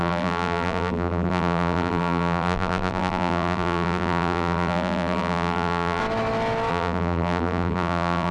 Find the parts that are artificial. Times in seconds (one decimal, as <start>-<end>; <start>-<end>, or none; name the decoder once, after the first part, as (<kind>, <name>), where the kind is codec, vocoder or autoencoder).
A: 0.0-6.0 (vocoder, BigVGAN v2); 6.7-8.3

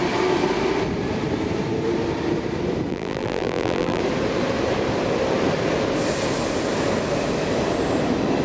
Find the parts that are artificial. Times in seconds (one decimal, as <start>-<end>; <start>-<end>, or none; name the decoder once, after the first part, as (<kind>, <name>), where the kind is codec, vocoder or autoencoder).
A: 2.9-4.0 (vocoder, BigVGAN v2)

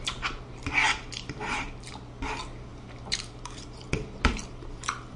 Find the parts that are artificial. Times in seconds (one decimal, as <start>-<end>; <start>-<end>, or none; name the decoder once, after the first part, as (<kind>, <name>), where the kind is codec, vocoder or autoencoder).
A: 0.8-1.9 (vocoder, BigVGAN v2); 2.7-5.2

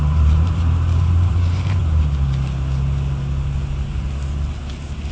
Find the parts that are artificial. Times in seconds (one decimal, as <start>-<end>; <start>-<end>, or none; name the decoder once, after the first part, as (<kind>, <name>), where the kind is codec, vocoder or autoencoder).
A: 0.0-1.8 (vocoder, BigVGAN v2)

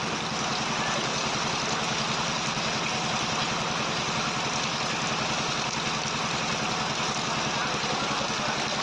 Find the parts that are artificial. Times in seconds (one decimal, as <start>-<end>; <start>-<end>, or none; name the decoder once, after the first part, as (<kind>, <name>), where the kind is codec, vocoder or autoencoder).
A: 0.5-1.5 (vocoder, BigVGAN v2)

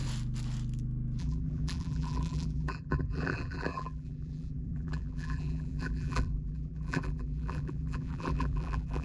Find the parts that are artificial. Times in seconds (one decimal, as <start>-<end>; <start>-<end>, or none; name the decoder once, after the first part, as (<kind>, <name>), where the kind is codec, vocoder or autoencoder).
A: 1.2-9.0 (vocoder, BigVGAN v2)